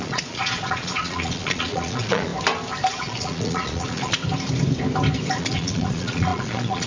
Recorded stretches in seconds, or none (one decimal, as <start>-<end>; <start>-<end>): 2.3-2.9; 4.2-5.4